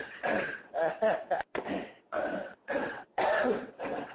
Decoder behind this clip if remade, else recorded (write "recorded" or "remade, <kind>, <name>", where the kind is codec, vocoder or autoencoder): remade, vocoder, WaveNeXt